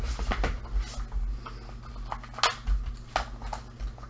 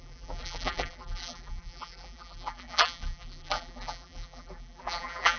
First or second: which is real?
first